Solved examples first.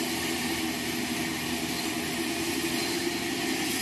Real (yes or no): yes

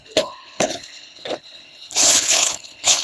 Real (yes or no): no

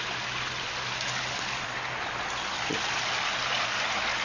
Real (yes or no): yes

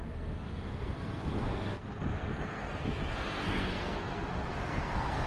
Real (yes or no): no